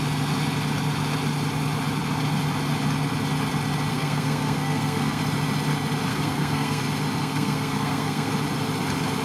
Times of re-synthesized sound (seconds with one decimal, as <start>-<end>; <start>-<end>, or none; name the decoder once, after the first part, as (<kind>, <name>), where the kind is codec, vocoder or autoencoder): 3.9-5.2 (codec, SNAC); 6.1-6.8; 7.2-8.3